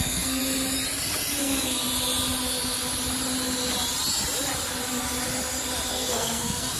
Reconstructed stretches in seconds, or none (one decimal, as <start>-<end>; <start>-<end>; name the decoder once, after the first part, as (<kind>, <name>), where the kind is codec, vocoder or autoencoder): 0.0-0.4 (codec, SNAC); 1.4-1.8; 5.9-6.8